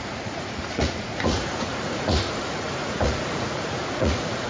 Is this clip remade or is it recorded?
remade